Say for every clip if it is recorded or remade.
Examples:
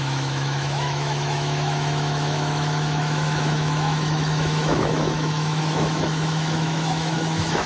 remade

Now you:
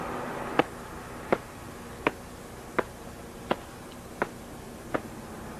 recorded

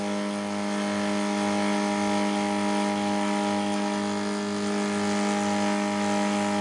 recorded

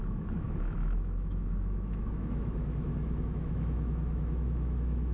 remade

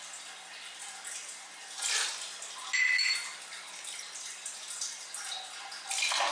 recorded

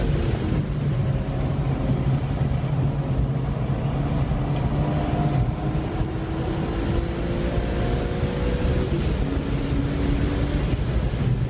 recorded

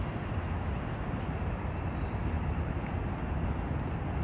recorded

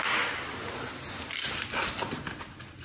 recorded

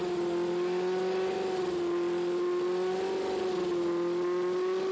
recorded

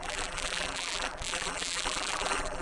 remade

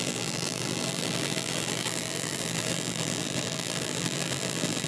remade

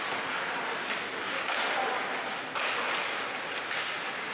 recorded